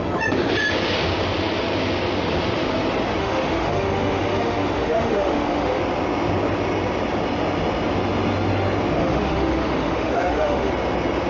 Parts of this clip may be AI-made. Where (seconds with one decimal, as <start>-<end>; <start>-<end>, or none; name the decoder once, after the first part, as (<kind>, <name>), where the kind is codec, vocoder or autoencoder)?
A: 3.2-5.8 (autoencoder, DAC-VAE); 9.0-10.7